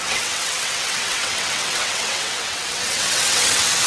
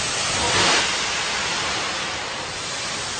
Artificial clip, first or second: first